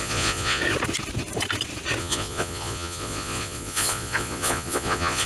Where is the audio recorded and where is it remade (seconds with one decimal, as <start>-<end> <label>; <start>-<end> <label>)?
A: 0.0-0.6 remade; 0.6-2.0 recorded; 2.0-5.3 remade

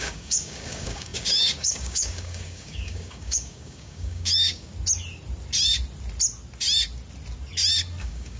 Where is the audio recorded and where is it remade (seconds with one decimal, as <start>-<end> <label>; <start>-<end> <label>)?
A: 0.0-4.7 remade; 4.7-8.0 recorded; 8.0-8.4 remade

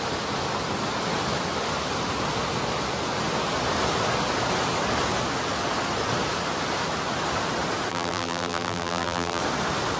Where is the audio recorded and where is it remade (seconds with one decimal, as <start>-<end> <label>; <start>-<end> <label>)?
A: 0.0-7.9 recorded; 7.9-9.4 remade; 9.4-10.0 recorded